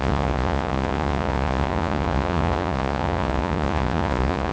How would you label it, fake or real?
fake